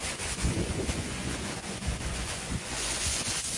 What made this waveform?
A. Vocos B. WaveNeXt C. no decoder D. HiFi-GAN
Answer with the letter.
A